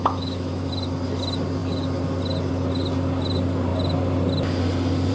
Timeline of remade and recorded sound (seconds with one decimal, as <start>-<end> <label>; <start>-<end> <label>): 0.0-0.7 remade; 0.7-5.1 recorded